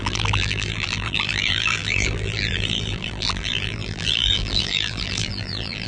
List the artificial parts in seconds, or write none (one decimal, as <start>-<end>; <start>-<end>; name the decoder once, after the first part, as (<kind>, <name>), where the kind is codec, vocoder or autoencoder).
0.0-5.9 (vocoder, BigVGAN v2)